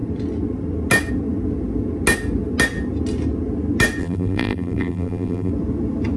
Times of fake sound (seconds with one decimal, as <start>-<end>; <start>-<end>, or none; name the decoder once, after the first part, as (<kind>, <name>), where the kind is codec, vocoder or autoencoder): 4.0-5.5 (vocoder, BigVGAN v2)

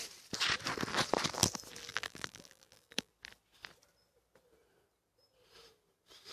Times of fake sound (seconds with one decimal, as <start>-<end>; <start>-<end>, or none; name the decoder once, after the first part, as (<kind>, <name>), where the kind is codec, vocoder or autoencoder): 1.9-3.1 (vocoder, BigVGAN v2)